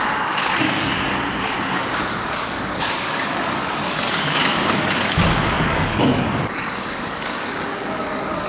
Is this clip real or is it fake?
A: fake